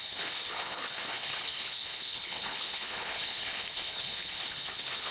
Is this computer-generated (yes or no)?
yes